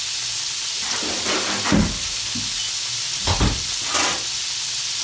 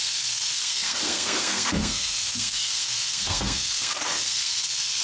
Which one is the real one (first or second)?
first